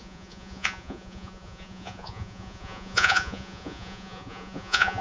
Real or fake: fake